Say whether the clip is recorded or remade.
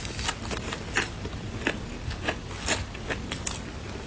recorded